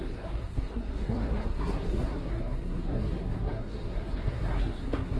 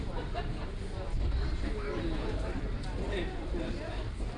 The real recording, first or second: second